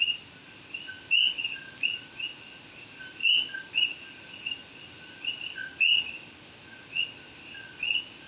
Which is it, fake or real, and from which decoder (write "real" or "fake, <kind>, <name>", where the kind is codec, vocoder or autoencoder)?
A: real